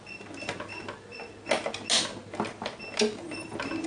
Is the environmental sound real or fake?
real